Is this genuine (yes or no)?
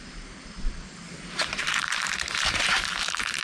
no